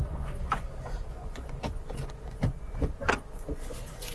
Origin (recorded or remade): remade